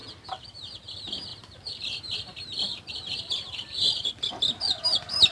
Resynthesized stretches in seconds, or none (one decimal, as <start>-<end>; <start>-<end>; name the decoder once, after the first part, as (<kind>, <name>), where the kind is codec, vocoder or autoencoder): 1.3-4.1 (vocoder, BigVGAN v2)